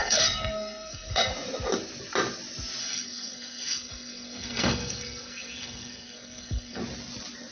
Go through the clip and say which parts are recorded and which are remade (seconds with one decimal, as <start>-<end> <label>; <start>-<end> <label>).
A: 0.0-1.3 remade; 1.3-2.8 recorded; 2.8-6.8 remade; 6.8-7.5 recorded